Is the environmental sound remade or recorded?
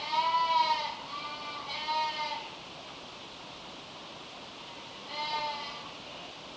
recorded